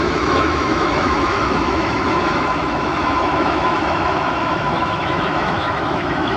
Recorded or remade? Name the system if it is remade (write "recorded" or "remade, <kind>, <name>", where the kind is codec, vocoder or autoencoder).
remade, autoencoder, DAC-VAE